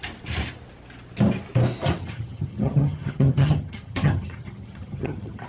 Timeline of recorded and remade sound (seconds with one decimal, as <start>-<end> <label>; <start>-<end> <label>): 0.0-2.0 recorded; 2.0-5.5 remade